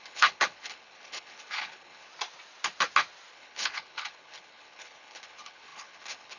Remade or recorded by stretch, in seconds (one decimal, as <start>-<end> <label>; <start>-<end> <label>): 0.0-2.1 remade; 2.1-3.3 recorded; 3.3-6.4 remade

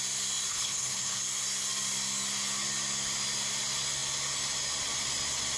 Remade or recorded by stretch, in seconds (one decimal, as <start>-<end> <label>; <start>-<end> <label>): 0.0-0.5 recorded; 0.5-1.2 remade; 1.2-5.6 recorded

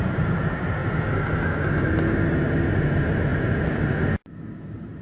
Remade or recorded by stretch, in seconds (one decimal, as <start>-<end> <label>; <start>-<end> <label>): 0.0-5.0 recorded

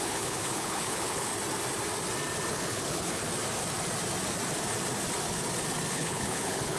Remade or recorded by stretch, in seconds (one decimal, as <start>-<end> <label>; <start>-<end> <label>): 0.0-1.3 remade; 1.3-2.5 recorded; 2.5-3.2 remade; 3.2-5.9 recorded; 5.9-6.8 remade

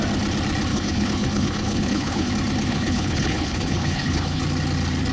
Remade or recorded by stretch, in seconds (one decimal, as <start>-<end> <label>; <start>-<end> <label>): 0.0-0.7 recorded; 0.7-2.3 remade; 2.3-2.7 recorded; 2.7-4.4 remade; 4.4-5.1 recorded

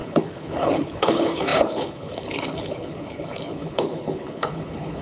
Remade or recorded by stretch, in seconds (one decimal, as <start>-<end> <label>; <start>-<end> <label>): 0.0-5.0 remade

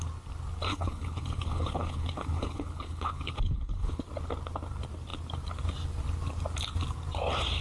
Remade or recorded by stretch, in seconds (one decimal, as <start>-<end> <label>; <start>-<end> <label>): 0.0-0.7 recorded; 0.7-4.0 remade; 4.0-7.6 recorded

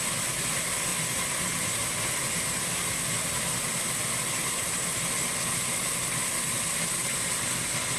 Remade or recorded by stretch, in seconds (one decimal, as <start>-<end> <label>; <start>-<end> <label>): 0.0-8.0 recorded